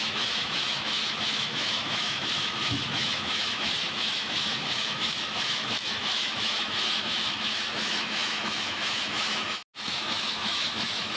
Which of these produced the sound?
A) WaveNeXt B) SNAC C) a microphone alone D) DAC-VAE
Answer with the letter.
D